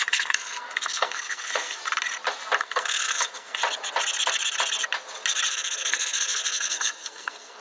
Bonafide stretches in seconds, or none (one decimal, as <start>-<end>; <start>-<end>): 1.8-2.6; 3.6-5.5